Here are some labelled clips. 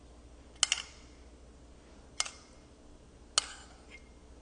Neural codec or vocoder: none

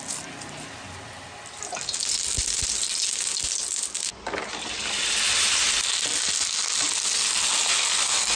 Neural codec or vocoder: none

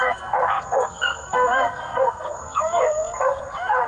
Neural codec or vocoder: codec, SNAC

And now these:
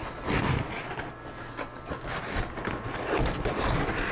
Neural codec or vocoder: none